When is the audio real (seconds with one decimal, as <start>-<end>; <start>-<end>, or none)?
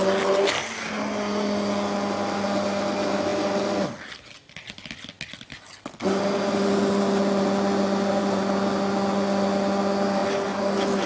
0.0-11.1